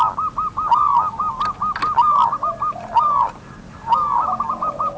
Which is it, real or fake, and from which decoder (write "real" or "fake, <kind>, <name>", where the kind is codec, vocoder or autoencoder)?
real